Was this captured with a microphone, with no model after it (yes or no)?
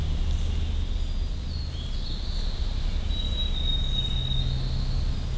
yes